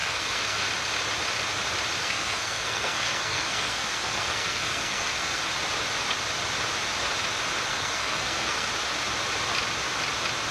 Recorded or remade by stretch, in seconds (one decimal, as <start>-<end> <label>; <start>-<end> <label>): 0.0-0.7 remade; 0.7-2.0 recorded; 2.0-5.4 remade; 5.4-7.7 recorded; 7.7-8.7 remade; 8.7-10.5 recorded